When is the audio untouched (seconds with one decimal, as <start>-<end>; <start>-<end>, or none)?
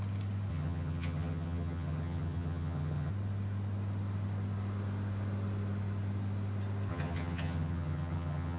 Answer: 0.0-0.5; 3.1-6.9